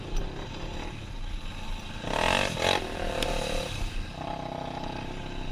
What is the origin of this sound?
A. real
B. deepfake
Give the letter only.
A